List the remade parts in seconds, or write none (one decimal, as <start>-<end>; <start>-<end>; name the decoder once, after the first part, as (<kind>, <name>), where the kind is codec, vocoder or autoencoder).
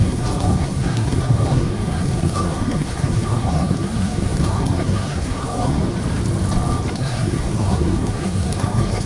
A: 0.0-5.8 (codec, SNAC); 6.9-9.1